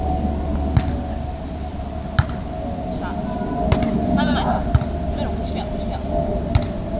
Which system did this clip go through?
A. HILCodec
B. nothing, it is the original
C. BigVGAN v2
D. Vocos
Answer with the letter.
B